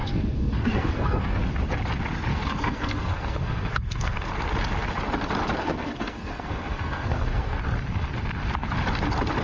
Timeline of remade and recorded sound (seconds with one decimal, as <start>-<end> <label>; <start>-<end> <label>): 0.0-1.4 remade; 1.4-2.3 recorded; 2.3-4.3 remade; 4.3-5.6 recorded; 5.6-7.6 remade; 7.6-9.4 recorded